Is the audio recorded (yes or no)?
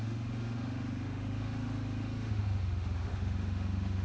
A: no